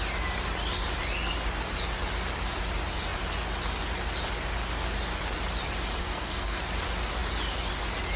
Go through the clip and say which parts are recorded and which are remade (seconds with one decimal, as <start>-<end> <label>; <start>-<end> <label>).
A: 0.0-6.0 recorded; 6.0-6.6 remade; 6.6-8.2 recorded

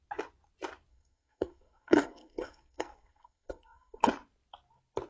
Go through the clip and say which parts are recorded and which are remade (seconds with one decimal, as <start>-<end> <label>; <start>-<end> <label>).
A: 0.0-0.9 recorded; 0.9-4.0 remade; 4.0-5.1 recorded